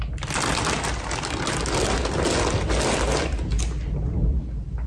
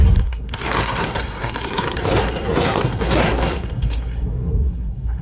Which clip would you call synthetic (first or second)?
second